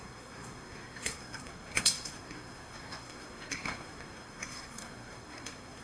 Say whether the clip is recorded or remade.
remade